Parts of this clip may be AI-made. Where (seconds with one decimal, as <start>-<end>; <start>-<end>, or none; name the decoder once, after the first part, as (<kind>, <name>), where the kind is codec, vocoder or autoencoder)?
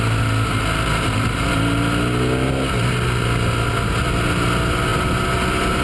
none